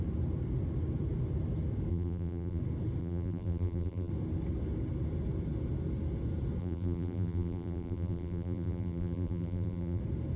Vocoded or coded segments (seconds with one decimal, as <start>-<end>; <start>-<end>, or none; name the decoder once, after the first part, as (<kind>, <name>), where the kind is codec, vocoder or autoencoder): 1.9-2.6 (vocoder, BigVGAN v2); 3.0-4.1; 6.6-10.0